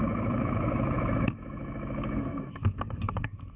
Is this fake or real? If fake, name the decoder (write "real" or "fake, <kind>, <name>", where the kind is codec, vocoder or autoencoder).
fake, autoencoder, DAC-VAE